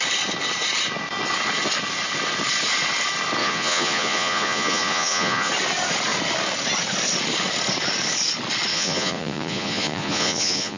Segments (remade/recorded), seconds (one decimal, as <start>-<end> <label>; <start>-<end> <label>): 0.0-3.4 recorded; 3.4-5.5 remade; 5.5-8.7 recorded; 8.7-10.8 remade